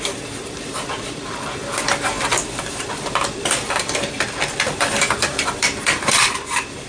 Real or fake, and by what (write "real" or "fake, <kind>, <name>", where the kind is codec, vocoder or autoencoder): fake, vocoder, BigVGAN v2